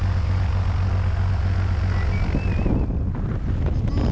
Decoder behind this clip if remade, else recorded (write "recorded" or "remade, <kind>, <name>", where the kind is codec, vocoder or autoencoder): recorded